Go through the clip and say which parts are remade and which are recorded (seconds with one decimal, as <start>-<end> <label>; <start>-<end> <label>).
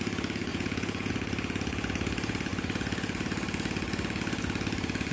0.0-0.5 recorded; 0.5-1.1 remade; 1.1-5.1 recorded